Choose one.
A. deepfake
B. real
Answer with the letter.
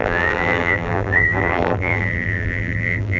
A